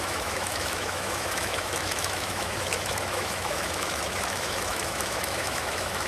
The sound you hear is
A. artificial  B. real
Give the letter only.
A